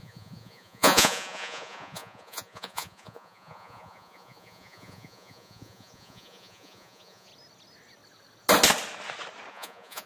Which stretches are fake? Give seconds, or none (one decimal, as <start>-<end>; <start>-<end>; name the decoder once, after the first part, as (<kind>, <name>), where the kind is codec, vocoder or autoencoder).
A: 0.0-7.3 (vocoder, Vocos); 9.5-10.1